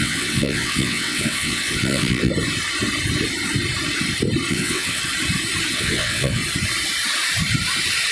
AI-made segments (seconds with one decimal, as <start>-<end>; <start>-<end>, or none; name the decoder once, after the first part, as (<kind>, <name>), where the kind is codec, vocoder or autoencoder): 0.0-2.3 (vocoder, WaveNeXt); 4.5-5.0; 5.7-6.4